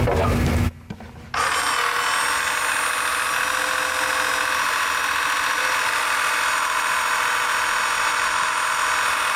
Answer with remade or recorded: recorded